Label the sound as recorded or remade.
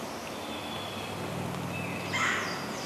recorded